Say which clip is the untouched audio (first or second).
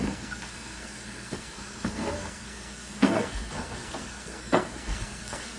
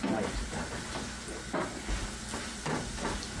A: second